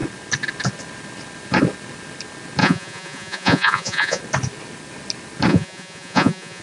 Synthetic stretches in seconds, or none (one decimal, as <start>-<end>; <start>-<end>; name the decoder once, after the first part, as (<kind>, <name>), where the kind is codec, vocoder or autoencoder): 2.6-4.2 (vocoder, Vocos); 5.5-6.6